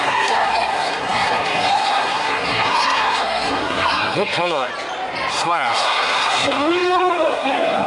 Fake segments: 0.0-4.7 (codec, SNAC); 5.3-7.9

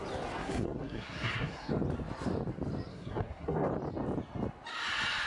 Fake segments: 0.4-1.7 (codec, SNAC); 2.9-3.7

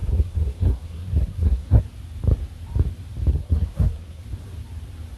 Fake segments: 0.0-1.8 (codec, SNAC); 3.3-4.2

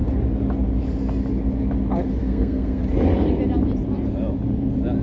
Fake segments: 2.2-2.8 (codec, SNAC)

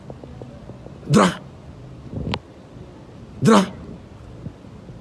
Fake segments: none

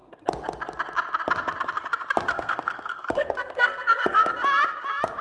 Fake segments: 2.3-4.3 (codec, SNAC)